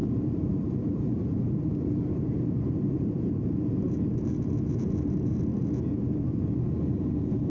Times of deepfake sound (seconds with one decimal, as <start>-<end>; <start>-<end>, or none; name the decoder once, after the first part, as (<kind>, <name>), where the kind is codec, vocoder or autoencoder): 0.0-5.5 (vocoder, BigVGAN v2); 7.0-7.5

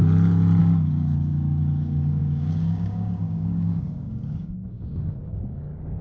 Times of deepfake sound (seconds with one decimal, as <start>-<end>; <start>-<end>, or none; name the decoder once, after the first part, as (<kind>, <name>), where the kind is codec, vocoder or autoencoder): 0.6-6.0 (codec, DAC)

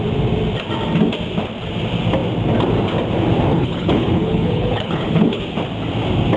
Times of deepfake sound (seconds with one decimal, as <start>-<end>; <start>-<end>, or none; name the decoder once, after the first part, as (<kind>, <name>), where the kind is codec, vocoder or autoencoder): 3.5-5.4 (codec, HILCodec)

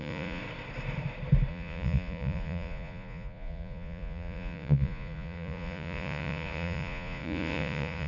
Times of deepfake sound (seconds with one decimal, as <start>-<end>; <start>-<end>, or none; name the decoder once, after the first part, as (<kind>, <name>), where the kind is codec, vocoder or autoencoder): 0.0-0.4 (vocoder, Vocos); 1.5-8.1